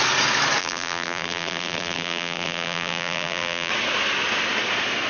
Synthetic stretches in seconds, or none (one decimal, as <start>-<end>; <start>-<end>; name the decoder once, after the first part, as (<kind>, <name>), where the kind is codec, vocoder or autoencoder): 0.6-3.7 (vocoder, BigVGAN v2)